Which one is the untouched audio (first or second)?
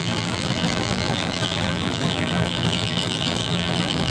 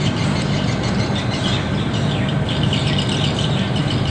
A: second